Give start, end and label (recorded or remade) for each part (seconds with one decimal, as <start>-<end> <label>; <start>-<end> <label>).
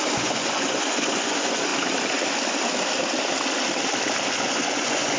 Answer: 0.0-1.7 remade; 1.7-4.3 recorded; 4.3-5.2 remade